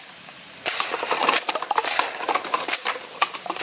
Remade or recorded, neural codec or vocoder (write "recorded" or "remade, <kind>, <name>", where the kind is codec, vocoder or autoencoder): remade, vocoder, BigVGAN v2